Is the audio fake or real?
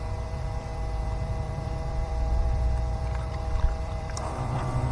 fake